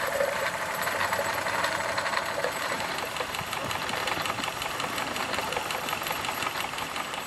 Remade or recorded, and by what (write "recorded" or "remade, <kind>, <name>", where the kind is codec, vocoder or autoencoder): remade, vocoder, BigVGAN v2